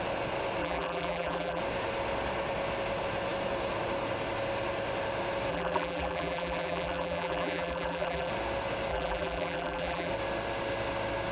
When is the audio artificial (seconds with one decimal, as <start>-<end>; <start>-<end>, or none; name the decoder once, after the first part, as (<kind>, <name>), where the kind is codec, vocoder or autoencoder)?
0.6-1.6 (vocoder, BigVGAN v2); 5.5-8.3; 8.9-10.1